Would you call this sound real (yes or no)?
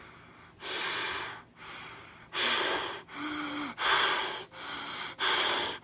yes